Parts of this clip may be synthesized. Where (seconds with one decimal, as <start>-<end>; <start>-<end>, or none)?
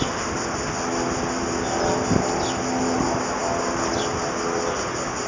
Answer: none